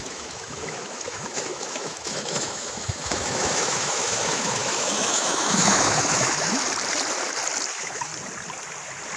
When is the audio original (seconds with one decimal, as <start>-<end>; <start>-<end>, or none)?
6.6-7.7; 8.1-9.2